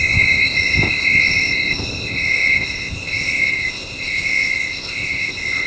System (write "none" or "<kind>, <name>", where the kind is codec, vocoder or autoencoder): codec, ZipCodec